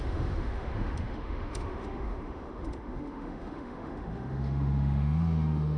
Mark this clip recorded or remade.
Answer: remade